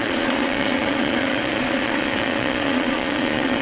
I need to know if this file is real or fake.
fake